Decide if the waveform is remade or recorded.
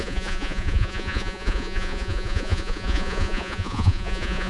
remade